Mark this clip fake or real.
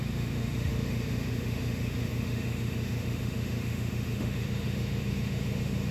fake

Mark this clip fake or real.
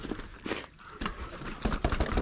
real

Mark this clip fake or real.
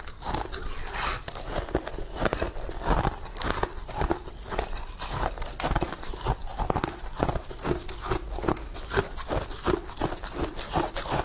real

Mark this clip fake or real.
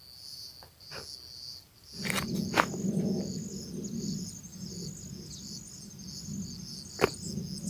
real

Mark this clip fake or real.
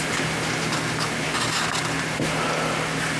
real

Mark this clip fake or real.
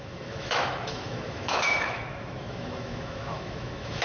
fake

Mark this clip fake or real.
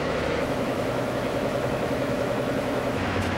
fake